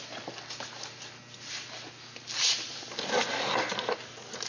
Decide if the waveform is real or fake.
real